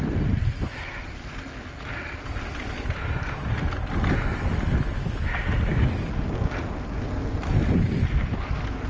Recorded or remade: recorded